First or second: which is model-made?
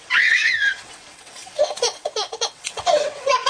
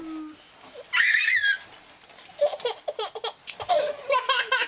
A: first